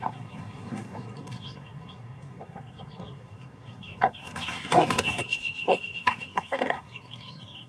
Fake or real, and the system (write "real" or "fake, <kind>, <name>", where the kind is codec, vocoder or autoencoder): fake, codec, SNAC